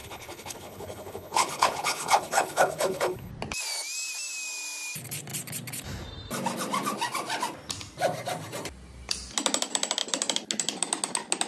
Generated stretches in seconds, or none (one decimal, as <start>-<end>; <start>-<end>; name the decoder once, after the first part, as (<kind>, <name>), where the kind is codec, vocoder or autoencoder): 0.0-3.3 (codec, HILCodec)